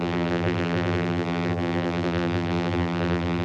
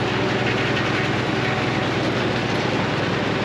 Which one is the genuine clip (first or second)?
second